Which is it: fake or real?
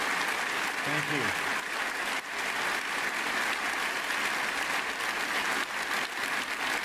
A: real